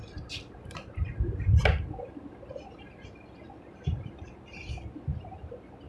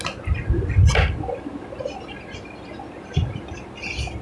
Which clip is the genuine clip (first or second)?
second